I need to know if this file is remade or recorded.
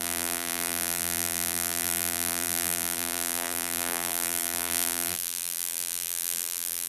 remade